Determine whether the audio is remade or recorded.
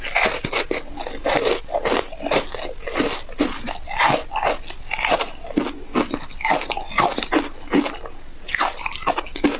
recorded